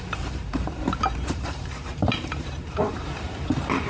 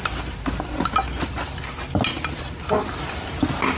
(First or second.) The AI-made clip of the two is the first